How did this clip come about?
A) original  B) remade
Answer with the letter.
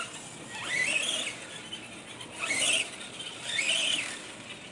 A